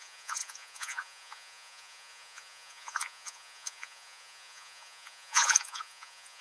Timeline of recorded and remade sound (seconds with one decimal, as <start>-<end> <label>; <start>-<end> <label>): 0.0-6.4 remade